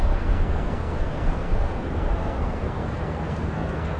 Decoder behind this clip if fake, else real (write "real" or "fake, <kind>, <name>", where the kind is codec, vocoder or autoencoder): fake, codec, SNAC